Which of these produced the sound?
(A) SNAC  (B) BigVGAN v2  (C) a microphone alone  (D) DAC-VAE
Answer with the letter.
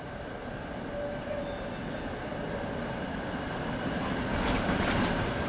C